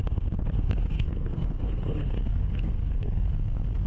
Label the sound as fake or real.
fake